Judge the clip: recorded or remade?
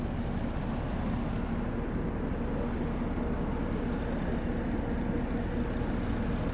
recorded